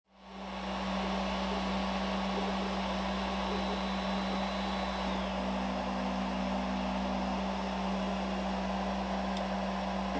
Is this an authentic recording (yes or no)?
yes